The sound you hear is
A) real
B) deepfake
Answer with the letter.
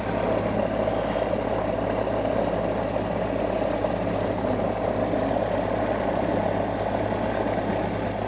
A